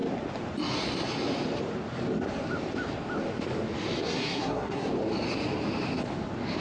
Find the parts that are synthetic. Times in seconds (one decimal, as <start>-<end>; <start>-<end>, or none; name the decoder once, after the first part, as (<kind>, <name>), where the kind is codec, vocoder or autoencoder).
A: 4.0-4.9 (codec, SNAC)